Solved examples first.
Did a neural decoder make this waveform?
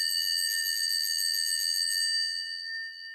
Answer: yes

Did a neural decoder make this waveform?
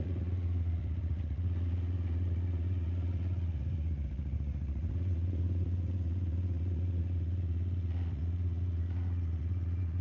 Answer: yes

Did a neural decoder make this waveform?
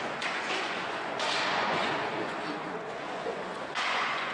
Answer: yes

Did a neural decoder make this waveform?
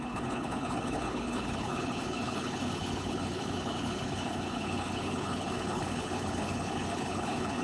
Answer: yes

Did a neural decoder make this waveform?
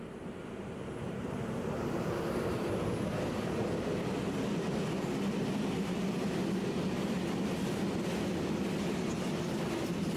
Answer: no